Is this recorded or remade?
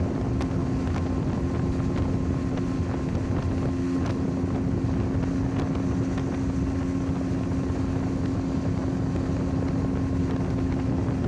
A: recorded